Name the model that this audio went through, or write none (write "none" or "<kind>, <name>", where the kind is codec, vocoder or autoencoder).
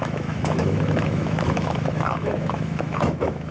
autoencoder, DAC-VAE